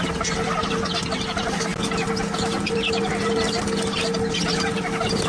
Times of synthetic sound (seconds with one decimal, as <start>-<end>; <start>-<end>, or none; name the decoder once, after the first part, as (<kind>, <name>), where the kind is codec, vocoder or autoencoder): none